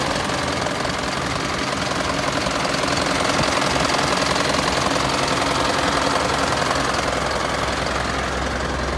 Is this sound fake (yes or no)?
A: no